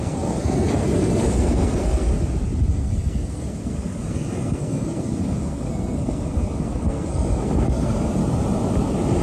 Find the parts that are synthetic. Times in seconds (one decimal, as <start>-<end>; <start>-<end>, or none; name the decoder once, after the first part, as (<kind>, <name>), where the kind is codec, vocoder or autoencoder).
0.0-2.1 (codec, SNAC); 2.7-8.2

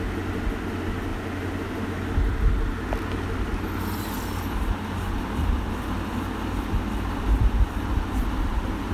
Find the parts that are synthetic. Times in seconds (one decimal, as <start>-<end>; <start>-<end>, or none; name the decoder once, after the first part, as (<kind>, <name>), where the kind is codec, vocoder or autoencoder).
none

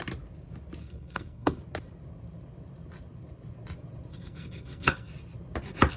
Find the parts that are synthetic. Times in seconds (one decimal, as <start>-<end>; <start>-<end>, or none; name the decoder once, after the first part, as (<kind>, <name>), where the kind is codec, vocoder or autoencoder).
0.8-1.6 (codec, SNAC); 4.1-5.1